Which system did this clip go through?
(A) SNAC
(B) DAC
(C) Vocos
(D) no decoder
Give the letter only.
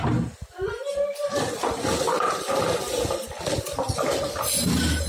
D